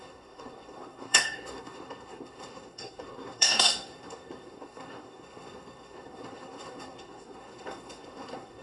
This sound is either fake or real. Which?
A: fake